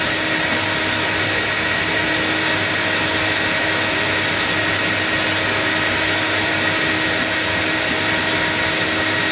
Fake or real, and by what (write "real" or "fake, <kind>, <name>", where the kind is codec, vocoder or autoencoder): real